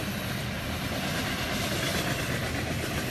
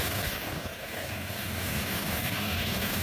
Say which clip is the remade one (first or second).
second